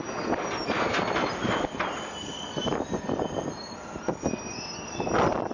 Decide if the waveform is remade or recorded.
recorded